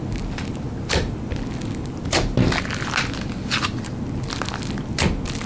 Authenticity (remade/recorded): recorded